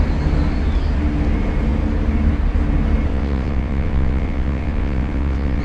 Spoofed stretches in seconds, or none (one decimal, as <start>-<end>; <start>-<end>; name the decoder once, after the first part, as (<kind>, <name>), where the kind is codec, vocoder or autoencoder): 3.1-5.6 (vocoder, WaveNeXt)